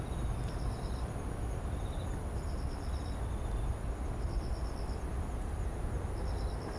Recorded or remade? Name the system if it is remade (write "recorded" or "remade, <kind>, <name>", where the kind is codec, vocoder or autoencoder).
recorded